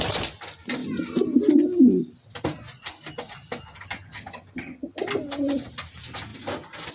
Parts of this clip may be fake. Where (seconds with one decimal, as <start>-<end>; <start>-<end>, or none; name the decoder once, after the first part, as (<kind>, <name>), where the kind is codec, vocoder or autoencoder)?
3.7-5.0 (vocoder, HiFi-GAN)